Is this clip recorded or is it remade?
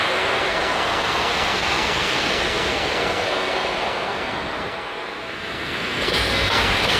remade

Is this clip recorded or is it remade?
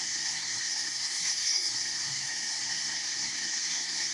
remade